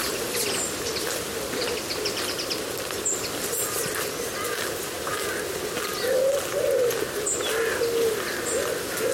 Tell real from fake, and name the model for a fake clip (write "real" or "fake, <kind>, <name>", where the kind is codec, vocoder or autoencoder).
real